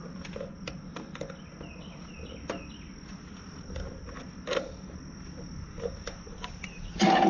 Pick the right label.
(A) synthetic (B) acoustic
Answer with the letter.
B